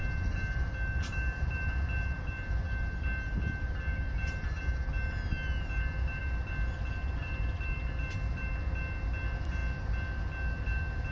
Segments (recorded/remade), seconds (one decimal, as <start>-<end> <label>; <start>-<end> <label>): 0.0-11.1 recorded